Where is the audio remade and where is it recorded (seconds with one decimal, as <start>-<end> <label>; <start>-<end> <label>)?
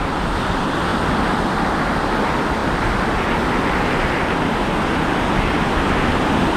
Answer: 0.0-6.6 recorded